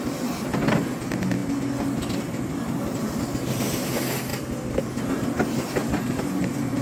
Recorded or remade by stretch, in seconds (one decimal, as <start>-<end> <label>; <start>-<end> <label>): 0.0-5.8 recorded; 5.8-6.8 remade